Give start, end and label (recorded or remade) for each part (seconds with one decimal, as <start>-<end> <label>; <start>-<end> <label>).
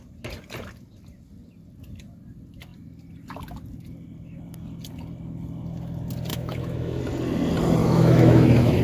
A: 0.0-6.3 recorded; 6.3-7.0 remade; 7.0-7.8 recorded; 7.8-8.8 remade